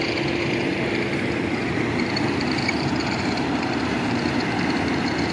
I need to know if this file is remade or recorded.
remade